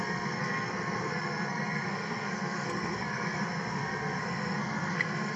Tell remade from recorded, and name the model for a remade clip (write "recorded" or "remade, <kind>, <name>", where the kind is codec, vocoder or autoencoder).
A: remade, codec, SNAC